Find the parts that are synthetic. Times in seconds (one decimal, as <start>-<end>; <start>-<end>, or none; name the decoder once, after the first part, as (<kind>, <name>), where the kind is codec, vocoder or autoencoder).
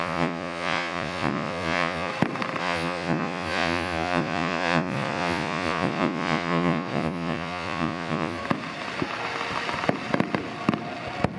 0.0-2.1 (vocoder, Vocos); 2.6-8.4